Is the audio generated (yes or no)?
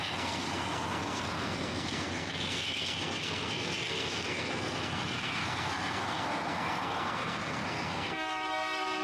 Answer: yes